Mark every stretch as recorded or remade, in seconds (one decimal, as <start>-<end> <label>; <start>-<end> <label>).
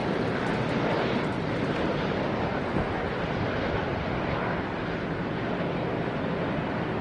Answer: 0.0-7.0 recorded